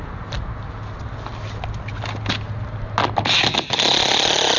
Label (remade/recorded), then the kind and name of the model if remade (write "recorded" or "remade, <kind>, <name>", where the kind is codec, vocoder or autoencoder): recorded